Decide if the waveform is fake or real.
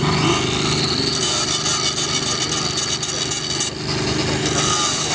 real